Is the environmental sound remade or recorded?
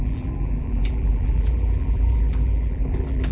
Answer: remade